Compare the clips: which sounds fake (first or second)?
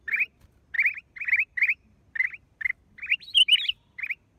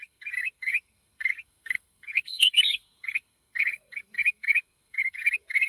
second